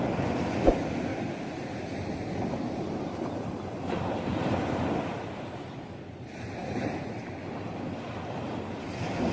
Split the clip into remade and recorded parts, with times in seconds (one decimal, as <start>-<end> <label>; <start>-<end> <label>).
0.0-9.3 recorded